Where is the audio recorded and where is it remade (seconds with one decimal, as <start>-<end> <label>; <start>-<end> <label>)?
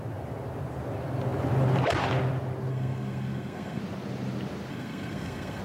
0.0-2.7 recorded; 2.7-3.8 remade; 3.8-4.7 recorded; 4.7-5.6 remade